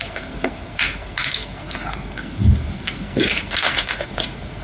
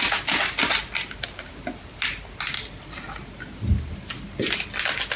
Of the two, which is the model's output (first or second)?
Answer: first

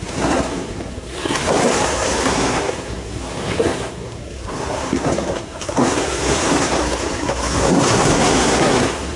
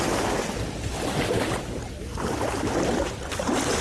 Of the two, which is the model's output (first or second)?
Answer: first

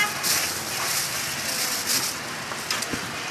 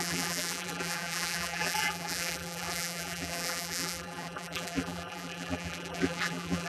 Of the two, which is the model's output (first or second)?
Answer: second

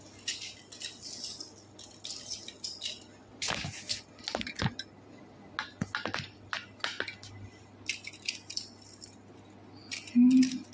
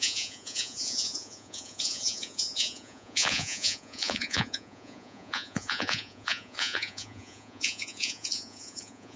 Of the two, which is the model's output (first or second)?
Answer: second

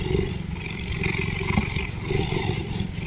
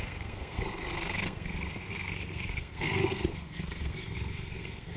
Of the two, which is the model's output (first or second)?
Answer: second